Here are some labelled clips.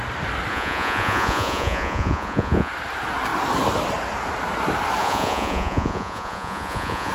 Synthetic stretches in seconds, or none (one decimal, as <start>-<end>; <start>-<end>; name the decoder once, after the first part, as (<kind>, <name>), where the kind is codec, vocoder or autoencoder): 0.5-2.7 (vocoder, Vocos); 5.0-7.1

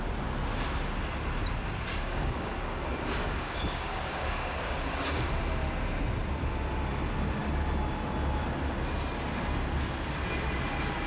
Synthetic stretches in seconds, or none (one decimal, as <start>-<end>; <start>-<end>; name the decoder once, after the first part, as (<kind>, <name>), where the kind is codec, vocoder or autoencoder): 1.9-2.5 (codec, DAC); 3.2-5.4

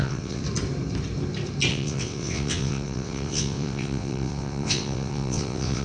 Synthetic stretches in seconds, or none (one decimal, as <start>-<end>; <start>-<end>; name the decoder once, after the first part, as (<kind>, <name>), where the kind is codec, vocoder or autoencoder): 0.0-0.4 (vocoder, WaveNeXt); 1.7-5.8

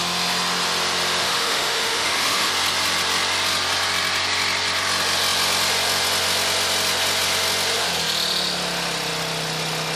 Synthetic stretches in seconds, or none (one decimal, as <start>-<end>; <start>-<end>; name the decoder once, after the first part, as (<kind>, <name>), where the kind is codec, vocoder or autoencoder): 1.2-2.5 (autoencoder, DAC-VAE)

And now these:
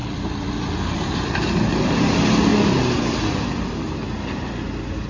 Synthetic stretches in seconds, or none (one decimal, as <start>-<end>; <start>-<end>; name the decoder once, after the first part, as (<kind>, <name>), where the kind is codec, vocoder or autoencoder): 0.0-1.3 (vocoder, BigVGAN v2); 2.5-3.7